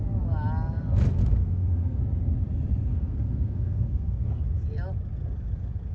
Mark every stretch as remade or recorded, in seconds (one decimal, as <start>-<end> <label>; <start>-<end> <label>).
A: 0.0-1.2 recorded; 1.2-2.0 remade; 2.0-2.9 recorded; 2.9-4.4 remade; 4.4-5.9 recorded